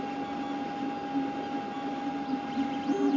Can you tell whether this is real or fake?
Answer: real